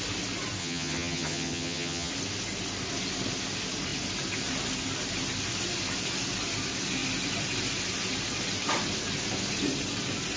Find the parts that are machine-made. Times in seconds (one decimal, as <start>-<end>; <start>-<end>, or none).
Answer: 0.6-2.1

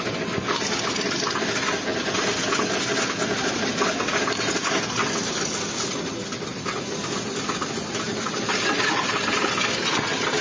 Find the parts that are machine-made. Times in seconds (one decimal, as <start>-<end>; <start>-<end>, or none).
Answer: none

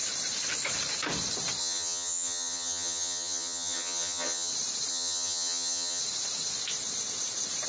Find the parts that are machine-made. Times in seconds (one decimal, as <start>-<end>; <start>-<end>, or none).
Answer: 1.6-4.5; 4.9-6.0

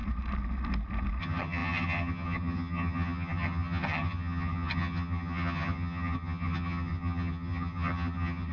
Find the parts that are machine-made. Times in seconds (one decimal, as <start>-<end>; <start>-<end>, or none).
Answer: 1.2-8.5

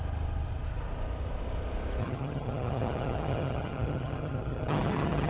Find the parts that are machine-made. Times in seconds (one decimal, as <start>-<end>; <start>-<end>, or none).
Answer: 2.0-5.3

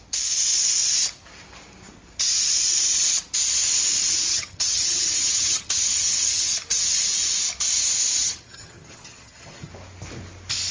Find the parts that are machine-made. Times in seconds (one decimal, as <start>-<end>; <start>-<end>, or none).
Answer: 4.3-6.4; 8.2-9.7

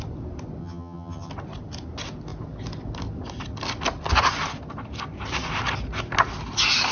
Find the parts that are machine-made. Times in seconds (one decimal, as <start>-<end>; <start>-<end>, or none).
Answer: 0.6-1.3

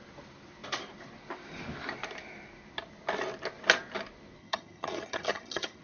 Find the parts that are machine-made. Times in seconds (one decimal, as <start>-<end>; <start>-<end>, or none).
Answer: 4.4-5.8